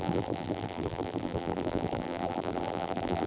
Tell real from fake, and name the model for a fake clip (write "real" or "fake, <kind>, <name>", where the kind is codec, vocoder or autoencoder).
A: fake, vocoder, BigVGAN v2